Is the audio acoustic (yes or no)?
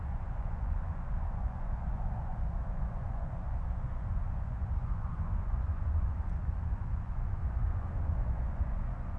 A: no